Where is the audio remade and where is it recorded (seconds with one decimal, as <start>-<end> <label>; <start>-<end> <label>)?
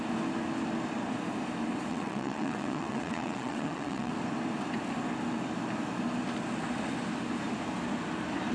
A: 0.0-1.9 recorded; 1.9-4.1 remade; 4.1-8.5 recorded